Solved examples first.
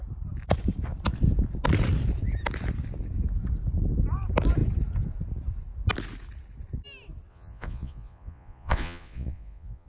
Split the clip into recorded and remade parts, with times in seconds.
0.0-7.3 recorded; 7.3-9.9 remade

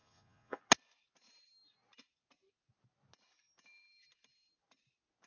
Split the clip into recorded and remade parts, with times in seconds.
0.0-0.6 remade; 0.6-5.3 recorded

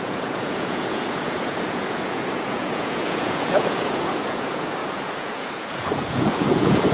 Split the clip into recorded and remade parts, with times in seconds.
0.0-6.9 remade

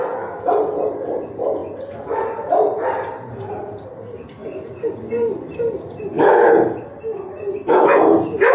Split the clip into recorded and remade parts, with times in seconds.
0.0-8.5 recorded

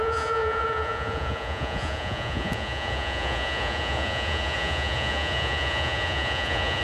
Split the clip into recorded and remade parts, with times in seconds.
0.0-6.8 remade

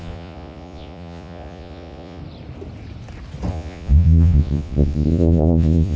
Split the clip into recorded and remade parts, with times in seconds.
0.0-2.2 remade; 2.2-3.5 recorded; 3.5-6.0 remade

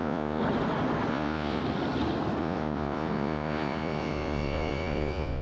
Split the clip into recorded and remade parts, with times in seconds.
0.0-0.4 remade; 0.4-1.1 recorded; 1.1-1.6 remade; 1.6-2.4 recorded; 2.4-5.4 remade